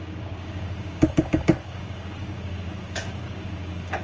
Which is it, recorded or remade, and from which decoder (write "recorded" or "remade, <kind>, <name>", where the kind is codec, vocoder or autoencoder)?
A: remade, codec, DAC